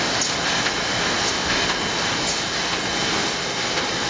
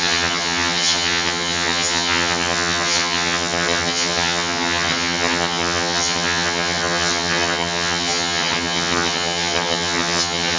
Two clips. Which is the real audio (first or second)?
first